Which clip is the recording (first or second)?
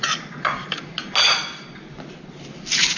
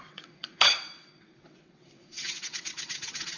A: first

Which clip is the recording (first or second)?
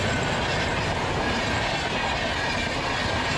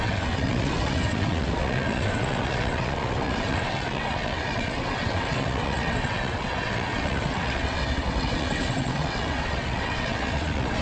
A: first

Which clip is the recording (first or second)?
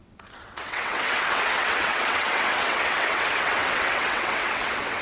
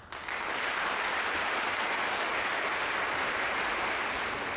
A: second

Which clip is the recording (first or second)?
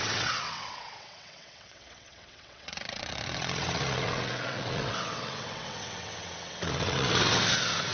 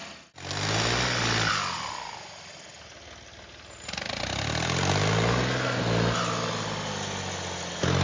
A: second